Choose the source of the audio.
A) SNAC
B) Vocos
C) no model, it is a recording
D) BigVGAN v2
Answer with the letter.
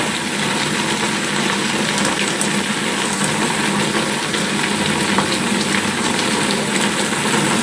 C